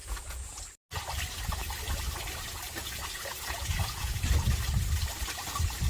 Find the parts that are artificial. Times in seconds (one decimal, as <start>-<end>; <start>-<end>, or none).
0.0-0.6; 2.8-4.1